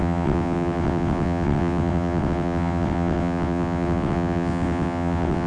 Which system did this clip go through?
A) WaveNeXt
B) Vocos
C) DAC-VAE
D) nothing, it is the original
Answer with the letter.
A